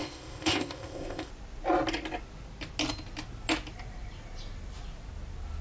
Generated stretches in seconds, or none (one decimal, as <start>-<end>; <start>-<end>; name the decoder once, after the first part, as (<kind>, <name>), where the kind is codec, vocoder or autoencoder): 0.0-1.3 (codec, ZipCodec)